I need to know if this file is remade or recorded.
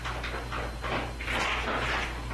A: recorded